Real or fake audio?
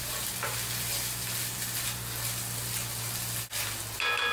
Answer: real